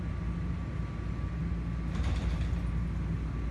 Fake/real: real